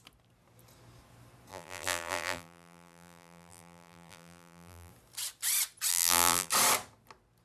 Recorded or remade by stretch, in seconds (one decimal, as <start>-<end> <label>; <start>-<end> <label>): 0.0-1.5 recorded; 1.5-4.9 remade; 4.9-5.9 recorded; 5.9-6.5 remade; 6.5-7.4 recorded